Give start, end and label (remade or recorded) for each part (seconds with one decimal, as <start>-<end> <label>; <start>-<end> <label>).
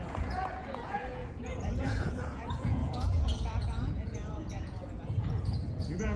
0.0-6.2 remade